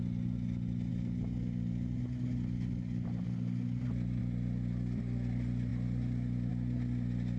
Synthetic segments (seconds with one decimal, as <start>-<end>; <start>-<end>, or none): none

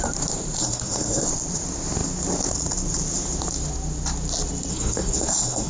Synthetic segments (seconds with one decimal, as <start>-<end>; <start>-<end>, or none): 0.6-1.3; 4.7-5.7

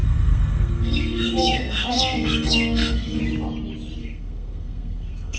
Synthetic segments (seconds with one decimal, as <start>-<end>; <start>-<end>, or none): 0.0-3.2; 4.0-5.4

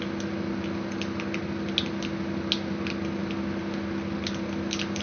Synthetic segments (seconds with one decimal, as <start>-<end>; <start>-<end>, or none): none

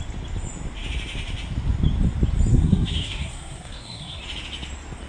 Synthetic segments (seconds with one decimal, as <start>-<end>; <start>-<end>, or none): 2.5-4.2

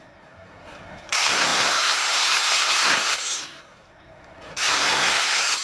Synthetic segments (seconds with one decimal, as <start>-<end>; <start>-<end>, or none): 0.0-5.6

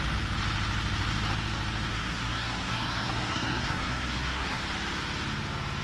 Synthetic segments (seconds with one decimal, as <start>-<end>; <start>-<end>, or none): 1.9-4.6

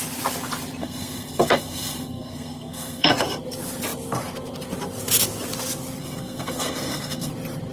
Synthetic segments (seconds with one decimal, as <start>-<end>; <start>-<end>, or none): 0.8-3.1; 6.0-7.3